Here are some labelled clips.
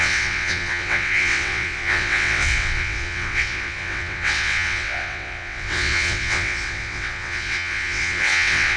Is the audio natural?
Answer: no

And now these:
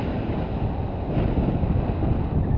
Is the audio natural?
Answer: yes